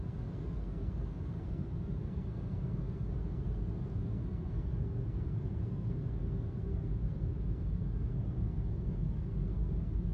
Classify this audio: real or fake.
fake